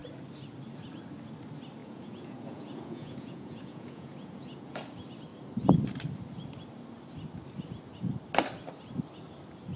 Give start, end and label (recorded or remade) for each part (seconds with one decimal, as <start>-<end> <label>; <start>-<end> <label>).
0.0-1.8 recorded; 1.8-4.8 remade; 4.8-9.8 recorded